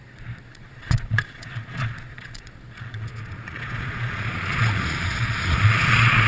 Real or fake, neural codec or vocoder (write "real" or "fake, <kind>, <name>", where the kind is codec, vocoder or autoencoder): fake, vocoder, Vocos